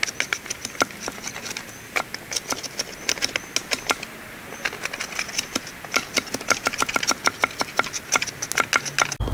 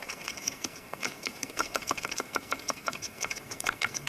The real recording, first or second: first